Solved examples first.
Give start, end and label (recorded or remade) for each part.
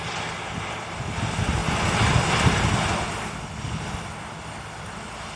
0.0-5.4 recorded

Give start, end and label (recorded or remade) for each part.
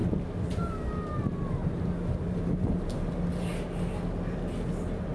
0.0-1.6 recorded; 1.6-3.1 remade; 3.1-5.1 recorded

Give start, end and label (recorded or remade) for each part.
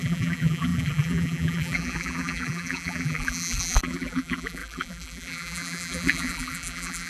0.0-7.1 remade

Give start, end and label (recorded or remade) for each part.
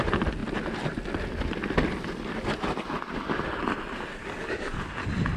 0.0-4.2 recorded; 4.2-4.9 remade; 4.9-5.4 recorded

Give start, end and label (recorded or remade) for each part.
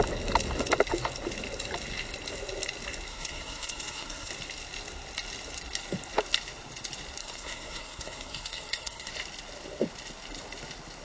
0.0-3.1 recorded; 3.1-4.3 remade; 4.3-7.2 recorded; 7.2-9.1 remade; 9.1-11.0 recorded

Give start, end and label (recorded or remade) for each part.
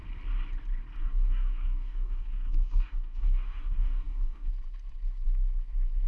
0.0-1.0 recorded; 1.0-4.5 remade; 4.5-6.1 recorded